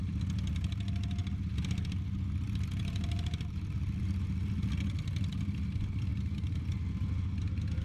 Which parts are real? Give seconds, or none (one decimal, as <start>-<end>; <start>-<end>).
0.0-7.8